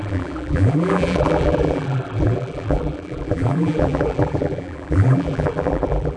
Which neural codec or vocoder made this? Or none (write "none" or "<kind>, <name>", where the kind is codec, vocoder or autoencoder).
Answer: vocoder, BigVGAN v2